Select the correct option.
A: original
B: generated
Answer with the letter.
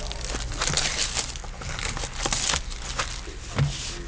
A